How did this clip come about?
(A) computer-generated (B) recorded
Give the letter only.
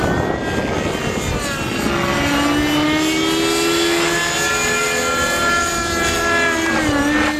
B